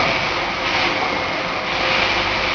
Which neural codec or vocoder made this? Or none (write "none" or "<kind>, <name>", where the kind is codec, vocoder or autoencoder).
none